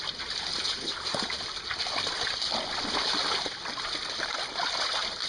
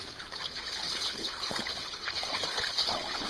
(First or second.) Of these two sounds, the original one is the first